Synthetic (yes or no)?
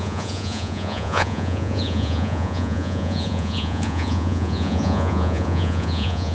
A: yes